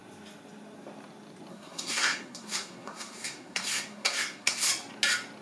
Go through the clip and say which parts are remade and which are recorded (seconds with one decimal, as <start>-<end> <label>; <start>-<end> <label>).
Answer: 0.0-1.5 recorded; 1.5-4.7 remade; 4.7-5.4 recorded